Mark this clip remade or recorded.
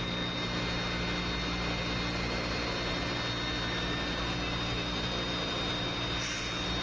recorded